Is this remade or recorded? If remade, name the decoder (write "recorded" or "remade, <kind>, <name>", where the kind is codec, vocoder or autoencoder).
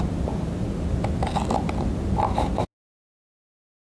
recorded